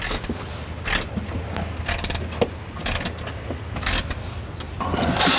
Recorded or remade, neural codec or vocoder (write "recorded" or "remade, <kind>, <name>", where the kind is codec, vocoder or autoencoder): recorded